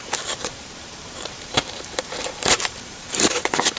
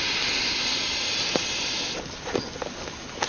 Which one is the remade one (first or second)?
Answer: first